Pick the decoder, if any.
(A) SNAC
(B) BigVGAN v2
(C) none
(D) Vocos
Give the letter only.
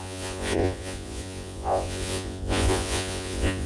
D